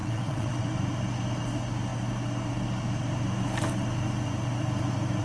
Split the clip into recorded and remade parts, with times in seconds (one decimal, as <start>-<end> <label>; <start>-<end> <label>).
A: 0.0-0.6 remade; 0.6-5.2 recorded